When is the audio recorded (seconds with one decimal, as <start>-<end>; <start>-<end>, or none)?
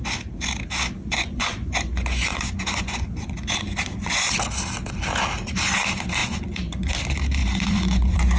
0.0-1.0; 4.4-6.2; 6.9-7.4